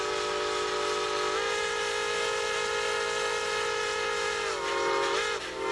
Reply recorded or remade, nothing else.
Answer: recorded